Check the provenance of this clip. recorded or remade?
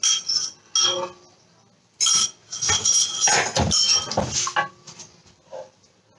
recorded